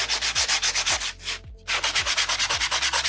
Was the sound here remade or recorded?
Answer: recorded